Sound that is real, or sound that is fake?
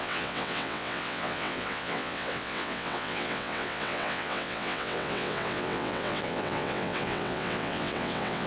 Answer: fake